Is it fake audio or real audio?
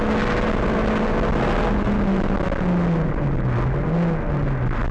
real